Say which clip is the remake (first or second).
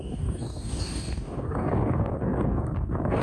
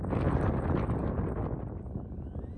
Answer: first